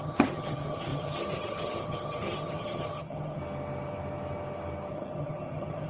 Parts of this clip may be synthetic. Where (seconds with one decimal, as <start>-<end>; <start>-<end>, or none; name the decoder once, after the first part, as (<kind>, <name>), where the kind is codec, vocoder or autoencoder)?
0.0-3.4 (vocoder, HiFi-GAN); 4.9-5.9